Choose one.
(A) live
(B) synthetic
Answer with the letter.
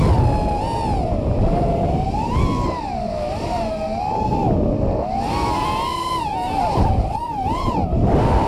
A